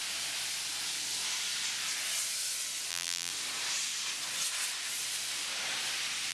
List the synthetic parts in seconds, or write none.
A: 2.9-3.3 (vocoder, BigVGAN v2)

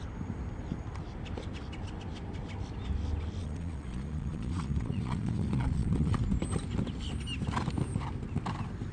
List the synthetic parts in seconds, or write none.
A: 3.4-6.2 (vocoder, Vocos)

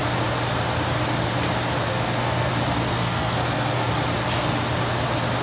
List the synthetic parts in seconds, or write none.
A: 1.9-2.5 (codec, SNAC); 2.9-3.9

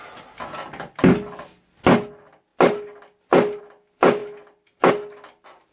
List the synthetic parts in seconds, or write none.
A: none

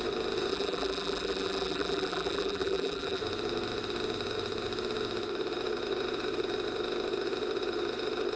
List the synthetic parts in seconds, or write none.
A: 0.5-3.2 (vocoder, BigVGAN v2)